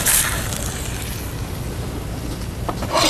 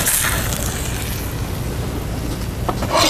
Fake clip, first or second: first